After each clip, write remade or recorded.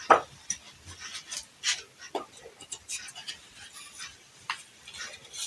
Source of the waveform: recorded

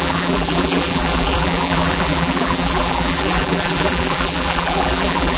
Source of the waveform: remade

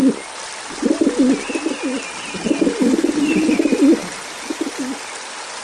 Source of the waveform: recorded